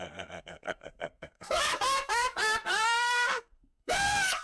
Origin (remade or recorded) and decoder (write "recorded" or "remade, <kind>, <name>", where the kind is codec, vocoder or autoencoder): remade, codec, SNAC